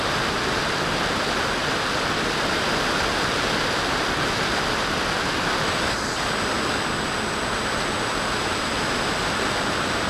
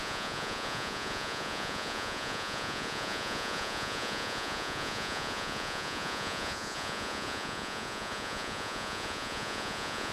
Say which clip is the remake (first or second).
second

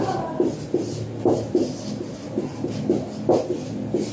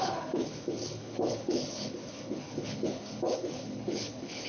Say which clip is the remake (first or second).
second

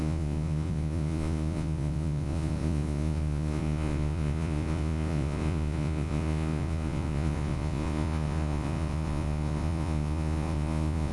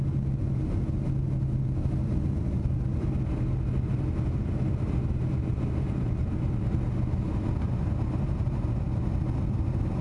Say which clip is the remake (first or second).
first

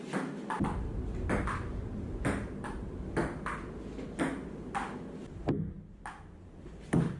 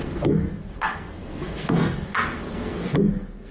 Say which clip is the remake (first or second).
second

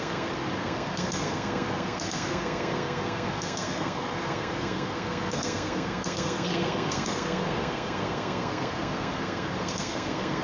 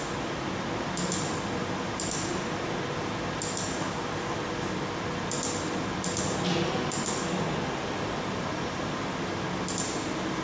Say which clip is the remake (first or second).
first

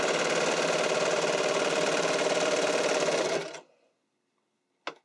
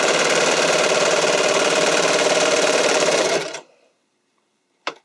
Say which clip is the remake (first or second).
second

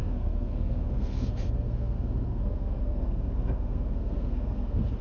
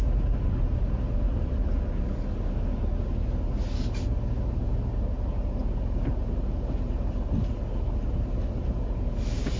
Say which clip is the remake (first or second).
first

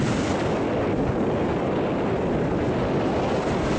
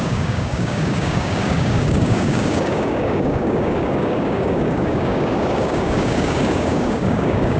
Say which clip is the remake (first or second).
second